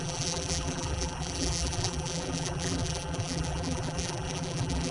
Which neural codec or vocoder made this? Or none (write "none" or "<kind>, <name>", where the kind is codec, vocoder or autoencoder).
vocoder, BigVGAN v2